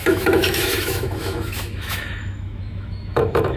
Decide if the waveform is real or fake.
fake